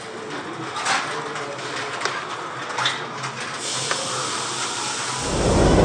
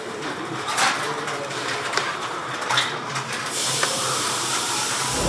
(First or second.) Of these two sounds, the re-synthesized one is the second